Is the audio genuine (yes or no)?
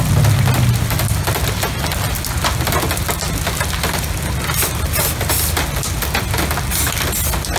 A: yes